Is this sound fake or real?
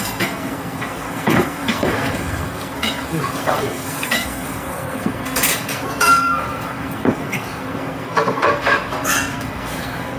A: fake